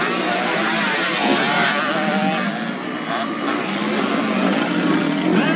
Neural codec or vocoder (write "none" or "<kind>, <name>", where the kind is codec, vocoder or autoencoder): none